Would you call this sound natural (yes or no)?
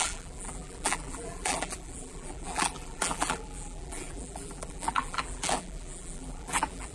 no